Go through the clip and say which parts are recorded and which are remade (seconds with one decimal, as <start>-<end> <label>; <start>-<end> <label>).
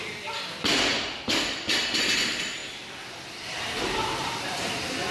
0.0-0.9 recorded; 0.9-2.0 remade; 2.0-2.6 recorded; 2.6-4.3 remade; 4.3-5.1 recorded